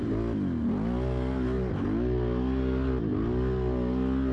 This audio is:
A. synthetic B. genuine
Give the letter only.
B